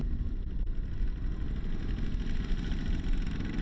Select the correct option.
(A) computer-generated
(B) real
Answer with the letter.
B